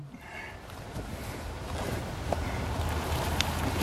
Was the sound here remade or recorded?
recorded